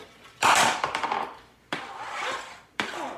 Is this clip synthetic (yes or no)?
yes